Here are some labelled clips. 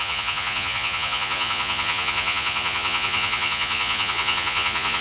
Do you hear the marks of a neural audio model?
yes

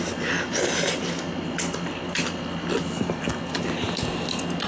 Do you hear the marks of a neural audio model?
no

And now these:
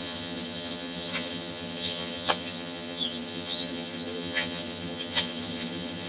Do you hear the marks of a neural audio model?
yes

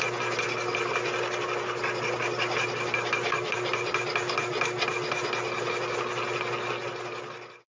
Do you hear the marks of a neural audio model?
no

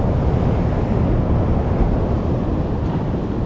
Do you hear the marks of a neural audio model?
no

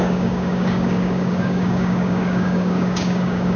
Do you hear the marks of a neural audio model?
yes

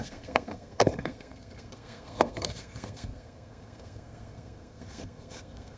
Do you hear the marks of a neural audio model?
yes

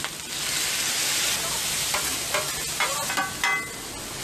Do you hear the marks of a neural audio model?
no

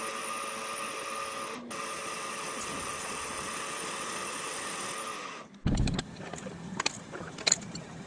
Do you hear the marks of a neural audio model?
no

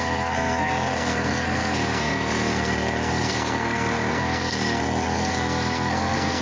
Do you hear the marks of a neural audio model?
yes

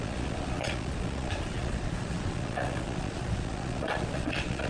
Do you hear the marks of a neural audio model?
yes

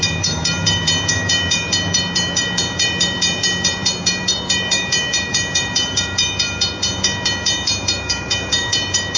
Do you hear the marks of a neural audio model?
yes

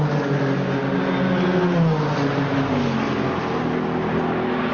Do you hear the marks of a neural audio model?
no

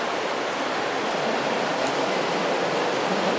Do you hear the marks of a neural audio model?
no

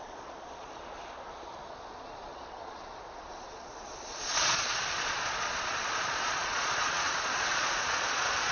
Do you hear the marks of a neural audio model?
yes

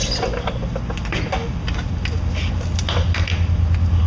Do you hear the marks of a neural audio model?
no